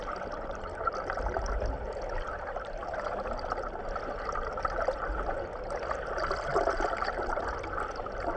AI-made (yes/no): no